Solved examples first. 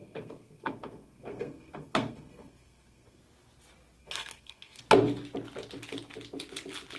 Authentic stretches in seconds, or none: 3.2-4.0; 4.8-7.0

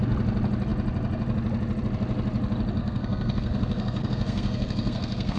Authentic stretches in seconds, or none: 0.0-2.8

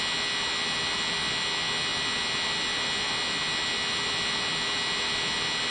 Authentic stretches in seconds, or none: 0.0-5.7

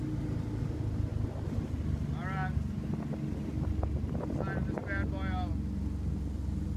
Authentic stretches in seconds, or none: 0.0-6.8